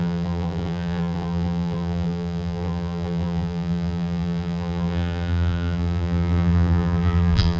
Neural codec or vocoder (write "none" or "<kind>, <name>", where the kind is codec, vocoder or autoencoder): vocoder, BigVGAN v2